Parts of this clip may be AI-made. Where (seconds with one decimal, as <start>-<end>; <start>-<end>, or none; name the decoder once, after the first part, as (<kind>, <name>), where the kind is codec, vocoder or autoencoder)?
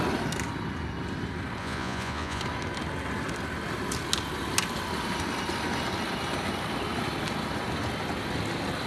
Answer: 1.6-2.4 (vocoder, Vocos)